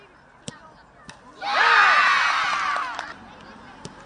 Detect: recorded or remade recorded